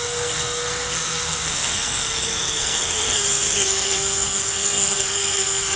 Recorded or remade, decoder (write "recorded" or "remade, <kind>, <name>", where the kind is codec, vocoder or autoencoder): remade, codec, SNAC